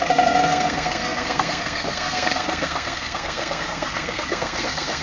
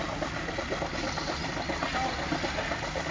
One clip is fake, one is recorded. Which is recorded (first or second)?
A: second